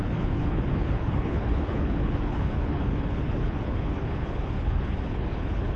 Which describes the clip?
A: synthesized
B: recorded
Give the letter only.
A